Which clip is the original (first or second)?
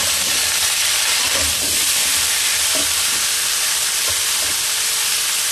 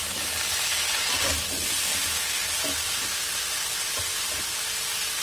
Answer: second